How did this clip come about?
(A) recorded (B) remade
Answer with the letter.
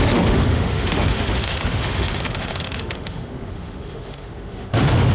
B